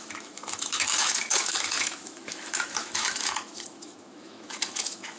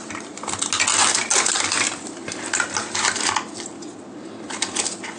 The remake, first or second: first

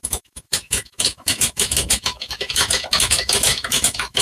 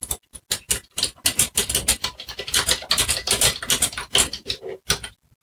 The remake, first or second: first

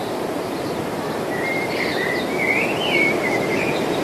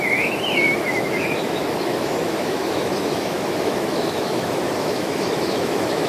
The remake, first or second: second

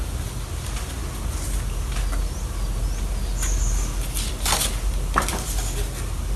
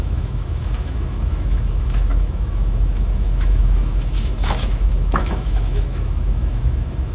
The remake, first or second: second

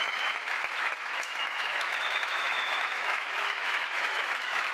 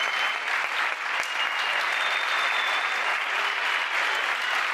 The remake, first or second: first